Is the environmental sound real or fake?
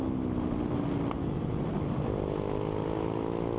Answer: real